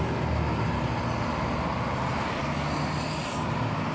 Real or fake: real